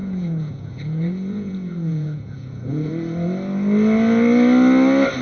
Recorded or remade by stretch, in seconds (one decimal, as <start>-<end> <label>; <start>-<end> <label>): 0.0-2.9 remade; 2.9-5.2 recorded